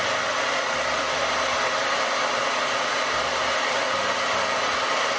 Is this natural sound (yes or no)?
yes